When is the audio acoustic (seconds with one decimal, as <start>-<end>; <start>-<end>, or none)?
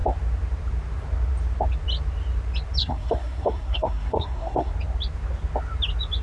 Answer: 0.0-2.8; 4.7-6.2